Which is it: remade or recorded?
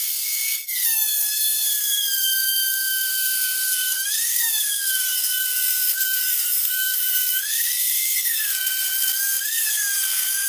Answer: remade